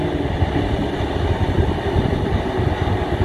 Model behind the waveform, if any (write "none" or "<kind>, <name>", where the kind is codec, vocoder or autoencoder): none